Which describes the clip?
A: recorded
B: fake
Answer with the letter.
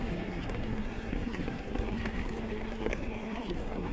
B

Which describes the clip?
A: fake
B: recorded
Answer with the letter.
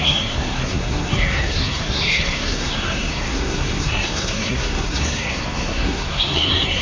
A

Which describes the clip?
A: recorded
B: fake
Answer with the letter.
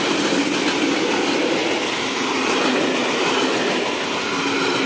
A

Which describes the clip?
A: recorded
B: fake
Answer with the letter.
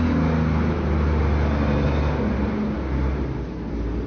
A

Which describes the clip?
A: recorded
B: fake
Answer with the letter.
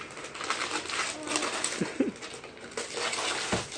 A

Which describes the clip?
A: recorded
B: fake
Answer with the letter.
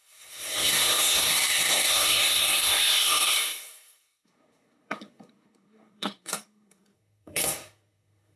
B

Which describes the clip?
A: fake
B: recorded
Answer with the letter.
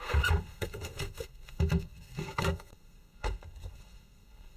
A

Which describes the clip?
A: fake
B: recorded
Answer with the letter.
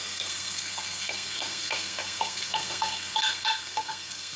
A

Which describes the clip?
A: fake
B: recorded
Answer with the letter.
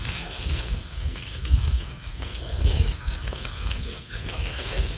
A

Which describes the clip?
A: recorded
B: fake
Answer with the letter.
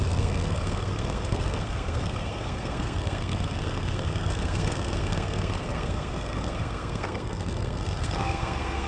B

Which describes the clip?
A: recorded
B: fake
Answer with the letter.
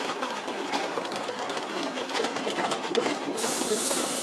B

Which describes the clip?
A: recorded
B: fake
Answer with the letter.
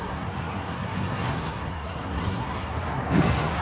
B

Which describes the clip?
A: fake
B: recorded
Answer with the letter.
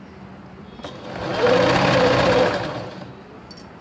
B